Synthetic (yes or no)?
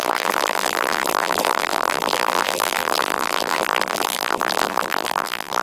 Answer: yes